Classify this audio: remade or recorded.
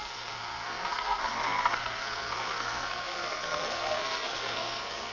remade